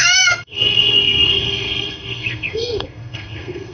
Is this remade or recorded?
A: remade